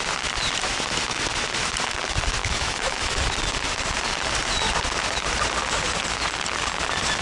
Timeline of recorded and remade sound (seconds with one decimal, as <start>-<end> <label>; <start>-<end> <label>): 0.0-2.4 recorded; 2.4-3.2 remade; 3.2-7.2 recorded